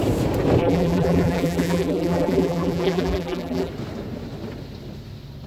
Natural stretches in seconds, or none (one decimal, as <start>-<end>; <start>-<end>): 0.0-0.6; 3.7-5.5